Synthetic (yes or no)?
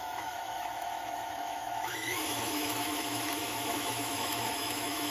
yes